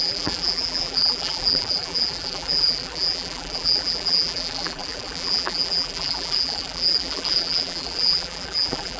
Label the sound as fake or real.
fake